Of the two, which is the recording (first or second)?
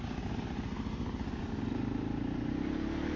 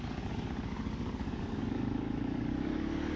first